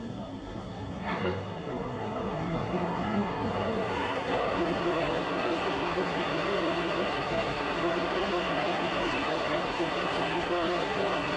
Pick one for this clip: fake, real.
fake